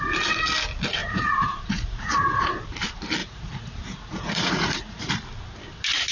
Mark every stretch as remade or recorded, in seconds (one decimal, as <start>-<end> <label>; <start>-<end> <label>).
0.0-1.0 recorded; 1.0-2.6 remade; 2.6-3.2 recorded; 3.2-5.1 remade; 5.1-6.1 recorded

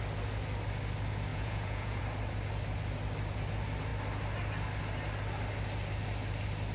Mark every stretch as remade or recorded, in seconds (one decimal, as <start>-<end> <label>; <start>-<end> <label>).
0.0-1.3 recorded; 1.3-2.0 remade; 2.0-6.7 recorded

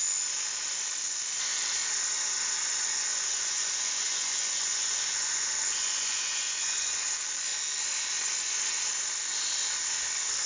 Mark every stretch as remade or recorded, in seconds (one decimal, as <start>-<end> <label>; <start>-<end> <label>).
0.0-3.1 recorded; 3.1-7.1 remade; 7.1-10.5 recorded

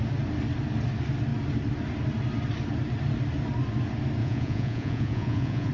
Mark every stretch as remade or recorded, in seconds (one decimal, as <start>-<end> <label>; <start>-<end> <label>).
0.0-4.2 recorded; 4.2-5.7 remade

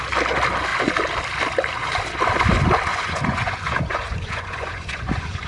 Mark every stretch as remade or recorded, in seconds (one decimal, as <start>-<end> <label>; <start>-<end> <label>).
0.0-2.9 recorded; 2.9-5.5 remade

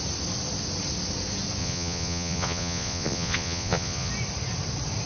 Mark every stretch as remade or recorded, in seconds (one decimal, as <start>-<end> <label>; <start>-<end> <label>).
0.0-1.6 recorded; 1.6-4.1 remade; 4.1-5.1 recorded